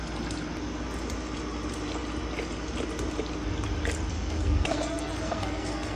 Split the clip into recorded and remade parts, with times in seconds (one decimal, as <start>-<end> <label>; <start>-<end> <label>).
0.0-4.1 recorded; 4.1-6.0 remade